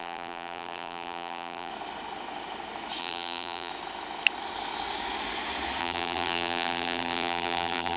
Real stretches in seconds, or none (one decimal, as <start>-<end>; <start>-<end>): 1.7-3.0; 3.7-5.8